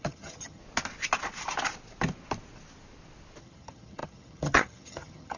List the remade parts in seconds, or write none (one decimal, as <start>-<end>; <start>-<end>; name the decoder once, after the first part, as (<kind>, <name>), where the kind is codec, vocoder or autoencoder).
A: 0.0-0.6 (vocoder, HiFi-GAN); 3.4-5.4